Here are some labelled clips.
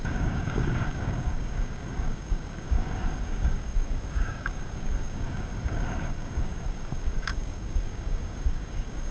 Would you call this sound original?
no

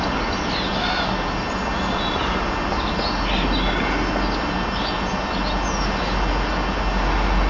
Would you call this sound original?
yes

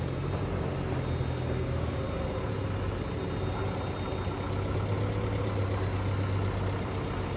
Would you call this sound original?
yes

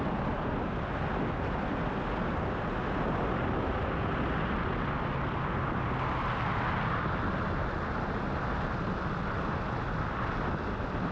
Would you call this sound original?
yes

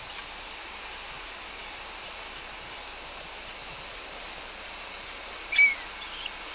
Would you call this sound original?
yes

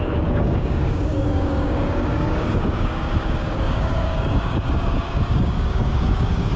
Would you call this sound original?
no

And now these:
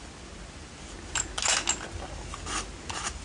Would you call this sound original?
yes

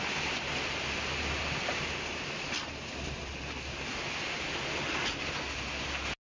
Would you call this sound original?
yes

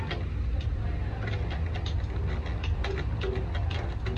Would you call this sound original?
yes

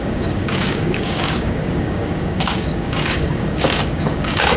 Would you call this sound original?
no